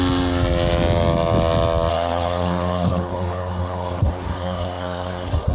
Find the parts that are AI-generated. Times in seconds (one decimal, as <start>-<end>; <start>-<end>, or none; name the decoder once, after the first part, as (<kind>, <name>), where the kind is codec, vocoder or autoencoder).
1.9-5.5 (codec, SNAC)